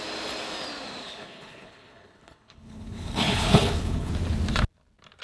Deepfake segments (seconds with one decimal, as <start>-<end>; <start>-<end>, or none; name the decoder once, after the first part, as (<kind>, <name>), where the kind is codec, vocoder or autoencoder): 1.0-4.1 (codec, HILCodec)